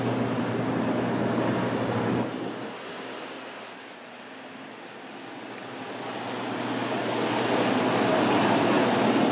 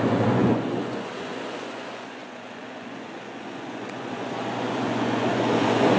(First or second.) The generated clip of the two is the second